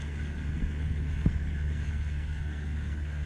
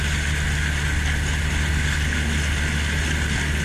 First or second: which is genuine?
second